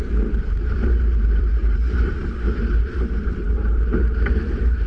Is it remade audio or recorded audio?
remade